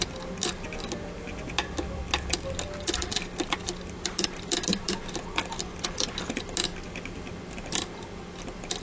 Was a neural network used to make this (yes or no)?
no